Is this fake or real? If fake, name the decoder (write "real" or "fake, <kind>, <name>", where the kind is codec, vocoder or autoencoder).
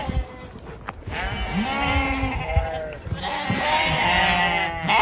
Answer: real